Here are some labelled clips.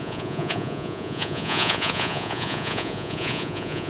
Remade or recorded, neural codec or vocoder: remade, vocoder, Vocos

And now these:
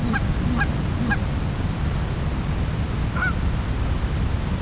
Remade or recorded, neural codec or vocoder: recorded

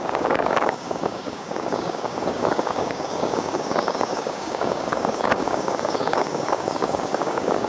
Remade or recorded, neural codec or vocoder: remade, codec, DAC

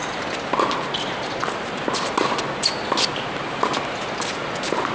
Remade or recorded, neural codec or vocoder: recorded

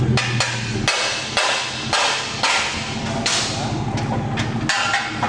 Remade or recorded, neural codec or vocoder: recorded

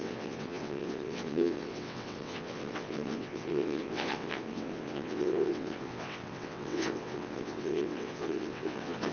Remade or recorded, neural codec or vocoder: remade, vocoder, WaveNeXt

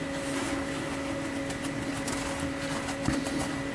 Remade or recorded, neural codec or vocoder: recorded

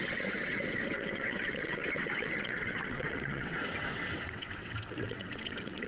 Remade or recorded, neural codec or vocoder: remade, vocoder, WaveNeXt